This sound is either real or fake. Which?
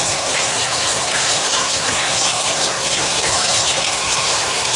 fake